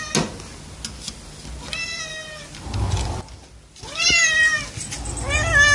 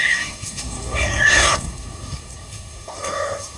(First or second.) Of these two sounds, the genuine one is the first